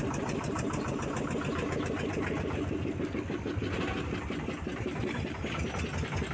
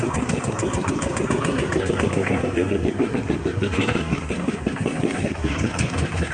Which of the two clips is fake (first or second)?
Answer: second